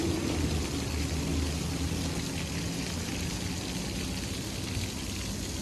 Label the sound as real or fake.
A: real